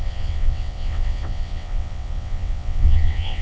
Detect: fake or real fake